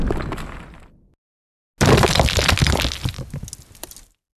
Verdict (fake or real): real